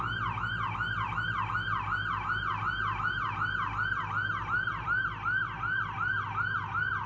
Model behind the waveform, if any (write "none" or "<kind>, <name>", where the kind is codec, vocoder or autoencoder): none